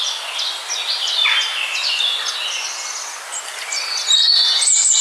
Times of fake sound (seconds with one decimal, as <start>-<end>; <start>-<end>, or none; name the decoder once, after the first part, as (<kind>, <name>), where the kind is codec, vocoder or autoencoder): none